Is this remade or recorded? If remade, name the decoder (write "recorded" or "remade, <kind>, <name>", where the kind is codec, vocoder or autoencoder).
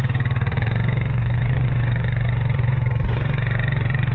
remade, vocoder, Vocos